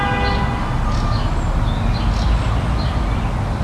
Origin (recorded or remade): recorded